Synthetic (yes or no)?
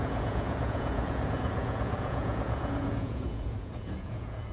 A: yes